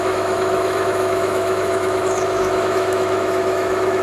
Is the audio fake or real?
fake